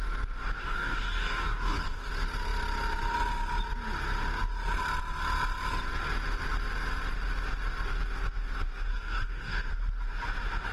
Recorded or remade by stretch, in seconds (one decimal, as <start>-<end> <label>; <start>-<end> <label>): 0.0-0.6 recorded; 0.6-2.1 remade; 2.1-8.9 recorded; 8.9-9.7 remade; 9.7-10.7 recorded